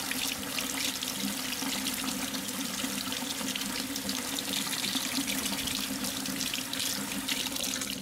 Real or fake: fake